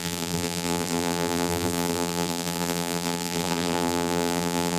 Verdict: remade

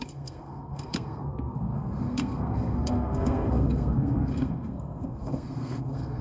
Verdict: remade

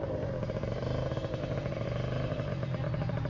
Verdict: remade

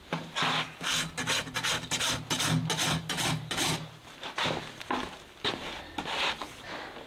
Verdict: recorded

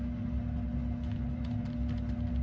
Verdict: recorded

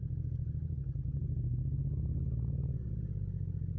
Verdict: recorded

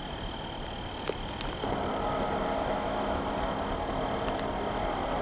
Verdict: recorded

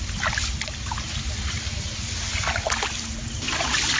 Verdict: recorded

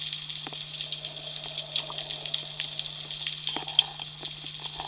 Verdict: recorded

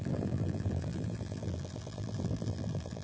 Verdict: remade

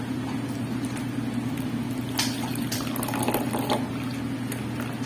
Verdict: recorded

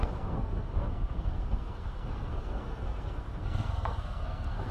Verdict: remade